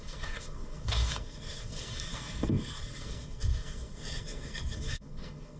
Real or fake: fake